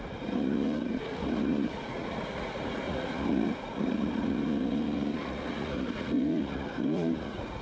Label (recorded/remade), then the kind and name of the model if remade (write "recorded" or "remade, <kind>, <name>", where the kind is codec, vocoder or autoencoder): remade, vocoder, Vocos